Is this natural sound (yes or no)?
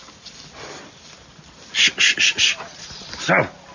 yes